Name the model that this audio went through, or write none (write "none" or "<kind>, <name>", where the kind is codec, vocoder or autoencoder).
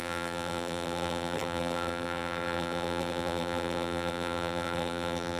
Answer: vocoder, BigVGAN v2